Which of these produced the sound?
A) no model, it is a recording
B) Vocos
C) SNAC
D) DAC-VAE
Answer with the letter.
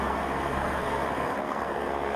C